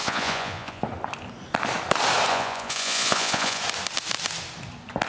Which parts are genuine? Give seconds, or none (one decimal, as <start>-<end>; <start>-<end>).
0.8-2.3; 3.6-5.1